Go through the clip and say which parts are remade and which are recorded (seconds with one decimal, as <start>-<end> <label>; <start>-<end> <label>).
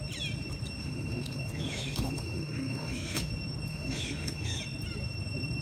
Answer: 0.0-0.8 recorded; 0.8-3.3 remade; 3.3-3.7 recorded; 3.7-4.6 remade; 4.6-5.6 recorded